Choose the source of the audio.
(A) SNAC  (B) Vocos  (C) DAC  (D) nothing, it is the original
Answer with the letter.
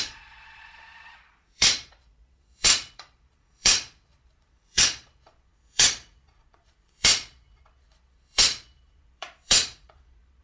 B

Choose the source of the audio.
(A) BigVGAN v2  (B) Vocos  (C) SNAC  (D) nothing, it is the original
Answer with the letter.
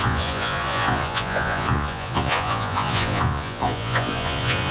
B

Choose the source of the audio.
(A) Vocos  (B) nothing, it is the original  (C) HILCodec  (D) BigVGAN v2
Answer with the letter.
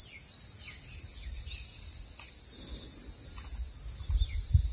B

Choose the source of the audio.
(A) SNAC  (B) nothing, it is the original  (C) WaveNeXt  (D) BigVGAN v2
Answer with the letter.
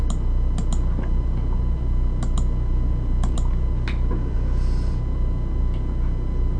B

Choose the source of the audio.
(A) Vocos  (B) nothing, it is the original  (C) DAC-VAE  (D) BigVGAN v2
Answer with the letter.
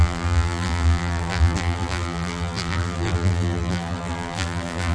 D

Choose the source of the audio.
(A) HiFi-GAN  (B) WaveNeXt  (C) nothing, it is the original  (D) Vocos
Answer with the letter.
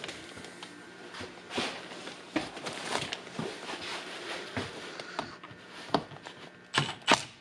C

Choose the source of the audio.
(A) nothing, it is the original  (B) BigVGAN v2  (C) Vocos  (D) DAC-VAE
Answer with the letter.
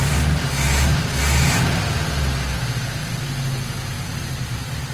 A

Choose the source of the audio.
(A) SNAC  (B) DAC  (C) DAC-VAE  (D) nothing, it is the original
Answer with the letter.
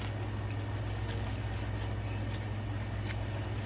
D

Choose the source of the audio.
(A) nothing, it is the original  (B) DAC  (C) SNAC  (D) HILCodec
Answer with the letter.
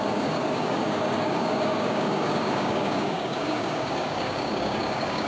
B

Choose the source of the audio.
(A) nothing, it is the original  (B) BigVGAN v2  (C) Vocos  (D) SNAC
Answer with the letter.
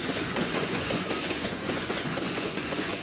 C